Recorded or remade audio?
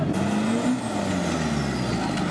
recorded